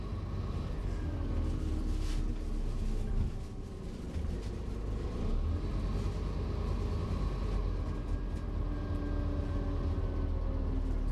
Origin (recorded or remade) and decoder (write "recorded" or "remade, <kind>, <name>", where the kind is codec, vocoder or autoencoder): recorded